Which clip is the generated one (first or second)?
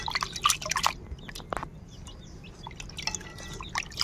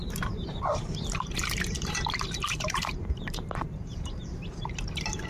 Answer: second